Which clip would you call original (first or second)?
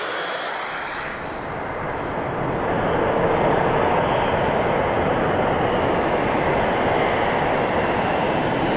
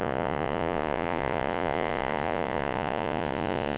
first